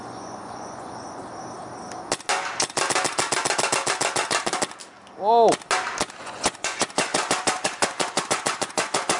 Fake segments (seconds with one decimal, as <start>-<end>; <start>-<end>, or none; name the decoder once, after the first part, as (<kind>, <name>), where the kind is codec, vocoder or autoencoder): 0.0-1.2 (vocoder, Vocos); 6.2-9.2